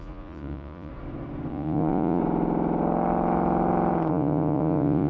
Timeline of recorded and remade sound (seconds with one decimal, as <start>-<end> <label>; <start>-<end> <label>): 0.0-0.9 remade; 0.9-1.5 recorded; 1.5-2.2 remade; 2.2-4.1 recorded; 4.1-5.1 remade